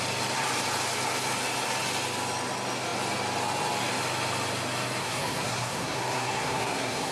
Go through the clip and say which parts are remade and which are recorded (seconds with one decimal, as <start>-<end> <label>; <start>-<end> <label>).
0.0-5.0 recorded; 5.0-7.1 remade

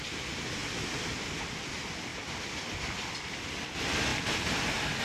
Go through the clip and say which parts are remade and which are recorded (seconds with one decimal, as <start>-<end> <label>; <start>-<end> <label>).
0.0-0.6 recorded; 0.6-1.3 remade; 1.3-4.1 recorded; 4.1-5.0 remade